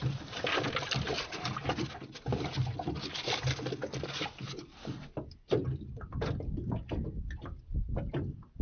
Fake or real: real